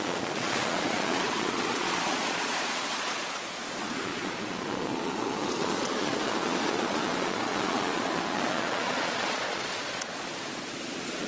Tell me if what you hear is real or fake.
fake